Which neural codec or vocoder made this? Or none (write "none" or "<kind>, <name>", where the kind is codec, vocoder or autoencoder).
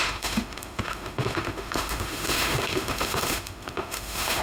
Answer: autoencoder, DAC-VAE